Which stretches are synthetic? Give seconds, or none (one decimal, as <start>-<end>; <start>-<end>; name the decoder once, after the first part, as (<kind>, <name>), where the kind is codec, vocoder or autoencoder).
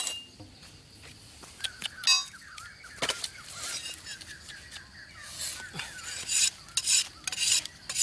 none